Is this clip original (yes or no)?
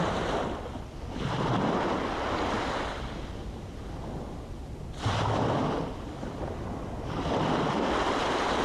yes